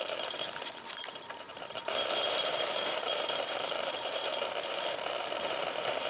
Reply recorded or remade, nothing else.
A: remade